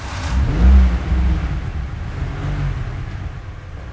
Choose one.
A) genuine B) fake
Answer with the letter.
A